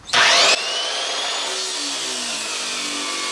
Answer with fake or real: real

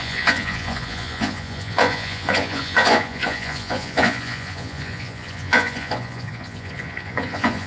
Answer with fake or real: fake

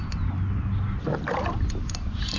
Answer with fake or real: real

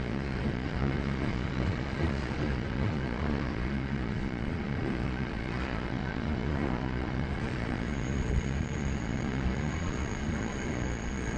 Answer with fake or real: fake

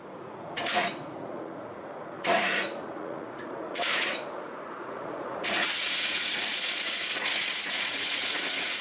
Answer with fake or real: fake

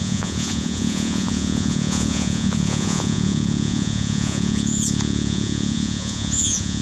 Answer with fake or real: fake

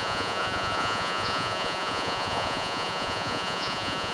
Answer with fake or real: fake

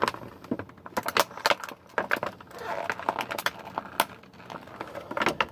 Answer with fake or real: real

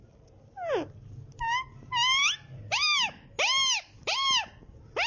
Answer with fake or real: real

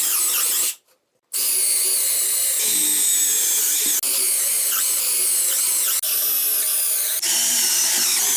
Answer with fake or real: real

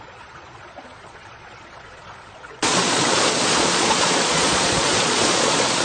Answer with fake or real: fake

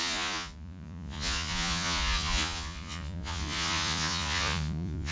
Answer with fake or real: fake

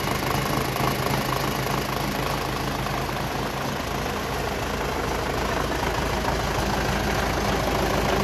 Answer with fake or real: real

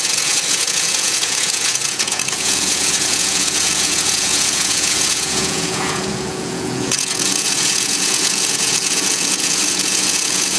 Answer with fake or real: fake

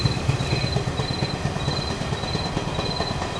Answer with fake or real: real